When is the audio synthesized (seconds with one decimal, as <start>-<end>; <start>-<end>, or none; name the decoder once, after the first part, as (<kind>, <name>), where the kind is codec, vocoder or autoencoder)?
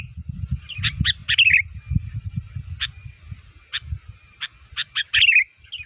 none